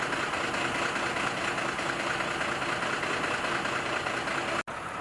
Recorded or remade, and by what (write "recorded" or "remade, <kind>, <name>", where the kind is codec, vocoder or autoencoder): recorded